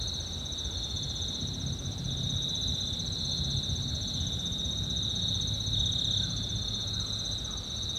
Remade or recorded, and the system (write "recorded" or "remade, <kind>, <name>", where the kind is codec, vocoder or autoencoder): recorded